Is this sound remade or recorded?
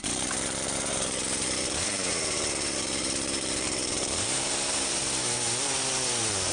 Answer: remade